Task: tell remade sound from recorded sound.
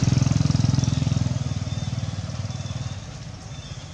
recorded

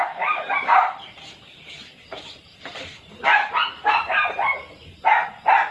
recorded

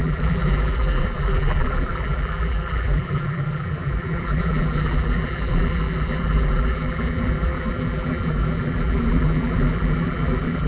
remade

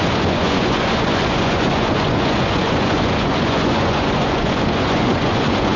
remade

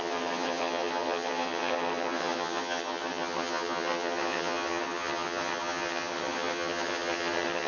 remade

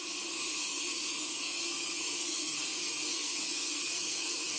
remade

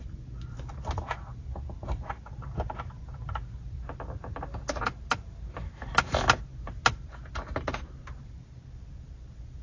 recorded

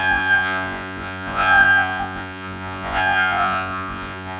remade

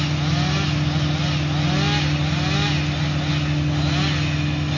recorded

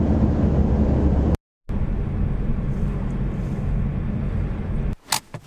recorded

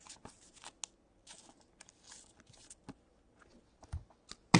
recorded